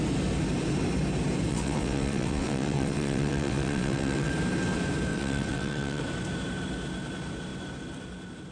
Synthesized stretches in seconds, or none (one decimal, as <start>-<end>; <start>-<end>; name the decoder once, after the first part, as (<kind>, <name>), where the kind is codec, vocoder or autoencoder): 1.5-4.3 (vocoder, WaveNeXt); 5.1-6.0